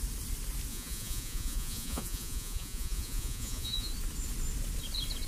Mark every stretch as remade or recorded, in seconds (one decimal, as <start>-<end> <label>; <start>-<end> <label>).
0.0-0.7 recorded; 0.7-3.9 remade; 3.9-5.3 recorded